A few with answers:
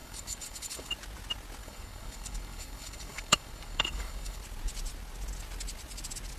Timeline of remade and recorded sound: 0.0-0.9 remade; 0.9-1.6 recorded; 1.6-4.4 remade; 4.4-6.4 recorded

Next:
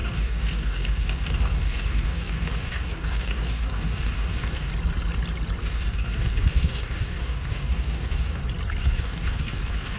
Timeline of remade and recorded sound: 0.0-4.7 remade; 4.7-5.6 recorded; 5.6-8.4 remade; 8.4-8.8 recorded; 8.8-10.0 remade

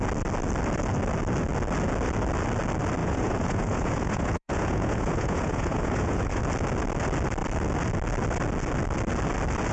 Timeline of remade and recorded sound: 0.0-3.0 recorded; 3.0-6.4 remade; 6.4-9.7 recorded

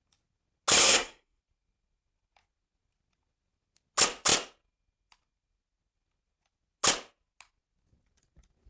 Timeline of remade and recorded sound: 0.0-0.8 recorded; 0.8-1.4 remade; 1.4-8.7 recorded